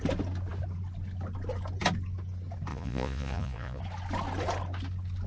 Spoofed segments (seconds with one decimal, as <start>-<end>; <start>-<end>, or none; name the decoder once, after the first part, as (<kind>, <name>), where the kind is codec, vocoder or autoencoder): 2.7-3.8 (vocoder, Vocos)